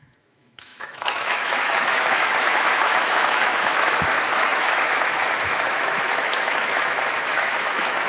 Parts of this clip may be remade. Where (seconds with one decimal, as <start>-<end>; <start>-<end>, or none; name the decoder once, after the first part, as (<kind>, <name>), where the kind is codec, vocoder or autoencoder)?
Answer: 0.0-8.1 (autoencoder, DAC-VAE)